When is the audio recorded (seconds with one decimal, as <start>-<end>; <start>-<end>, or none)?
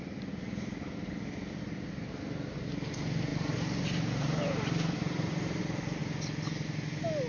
0.0-3.3; 5.6-7.3